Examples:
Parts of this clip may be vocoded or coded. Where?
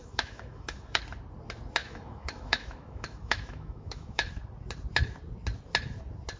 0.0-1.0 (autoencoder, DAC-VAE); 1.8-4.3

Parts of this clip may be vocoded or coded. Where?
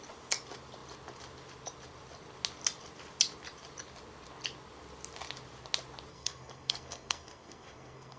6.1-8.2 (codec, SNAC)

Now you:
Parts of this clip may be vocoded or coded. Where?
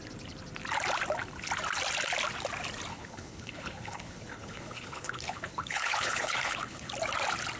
2.9-6.9 (codec, HILCodec)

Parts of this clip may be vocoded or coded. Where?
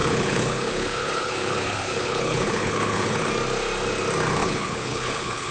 0.0-3.3 (codec, HILCodec); 4.4-5.5